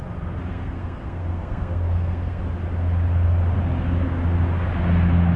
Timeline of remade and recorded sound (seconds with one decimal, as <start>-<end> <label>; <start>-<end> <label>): 0.0-0.5 recorded; 0.5-2.4 remade; 2.4-5.4 recorded